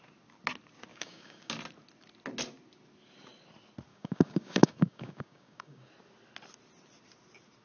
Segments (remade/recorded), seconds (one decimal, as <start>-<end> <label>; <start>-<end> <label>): 0.0-0.9 recorded; 0.9-1.5 remade; 1.5-3.9 recorded; 3.9-5.9 remade; 5.9-7.6 recorded